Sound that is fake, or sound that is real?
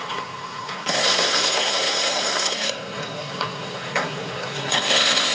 fake